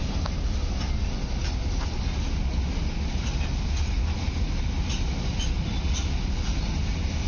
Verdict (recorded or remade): recorded